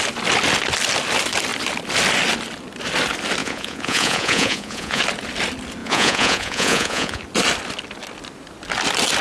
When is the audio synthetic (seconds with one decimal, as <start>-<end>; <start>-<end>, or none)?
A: 3.4-5.0; 5.8-7.2